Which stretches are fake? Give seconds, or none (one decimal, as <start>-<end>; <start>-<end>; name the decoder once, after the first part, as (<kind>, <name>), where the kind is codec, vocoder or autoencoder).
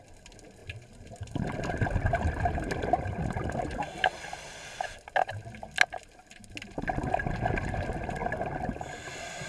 none